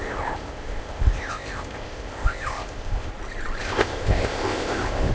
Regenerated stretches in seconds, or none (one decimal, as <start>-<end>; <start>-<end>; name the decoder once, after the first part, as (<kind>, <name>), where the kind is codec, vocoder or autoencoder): 0.0-3.1 (codec, ZipCodec); 3.6-5.1